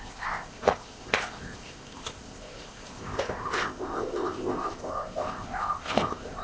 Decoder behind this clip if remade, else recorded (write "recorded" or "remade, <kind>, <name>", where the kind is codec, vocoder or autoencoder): remade, codec, ZipCodec